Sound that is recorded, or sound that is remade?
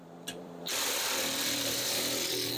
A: remade